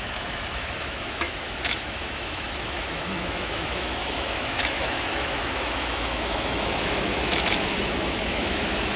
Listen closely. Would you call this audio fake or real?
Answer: fake